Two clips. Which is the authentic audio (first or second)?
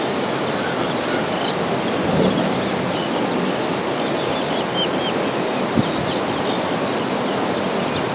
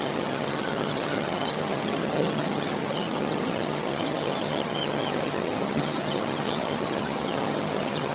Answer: first